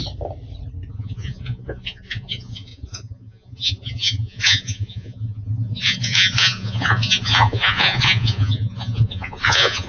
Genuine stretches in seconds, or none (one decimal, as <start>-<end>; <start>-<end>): 0.0-0.9